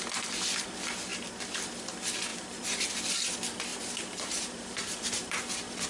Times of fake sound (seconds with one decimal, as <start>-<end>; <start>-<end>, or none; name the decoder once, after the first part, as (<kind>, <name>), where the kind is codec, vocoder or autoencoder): 2.3-3.0 (vocoder, BigVGAN v2); 3.7-5.9